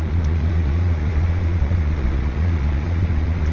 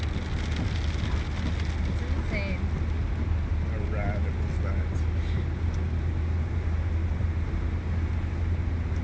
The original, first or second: second